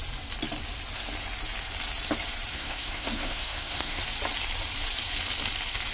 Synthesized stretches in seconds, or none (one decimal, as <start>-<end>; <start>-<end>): 2.5-4.0